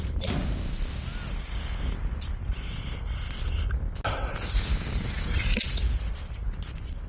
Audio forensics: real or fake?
real